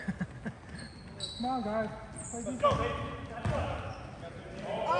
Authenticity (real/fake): real